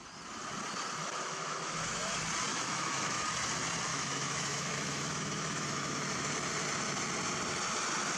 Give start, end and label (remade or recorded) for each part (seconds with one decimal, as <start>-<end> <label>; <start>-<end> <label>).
0.0-1.0 recorded; 1.0-2.0 remade; 2.0-2.5 recorded; 2.5-3.2 remade; 3.2-3.9 recorded; 3.9-6.3 remade; 6.3-8.2 recorded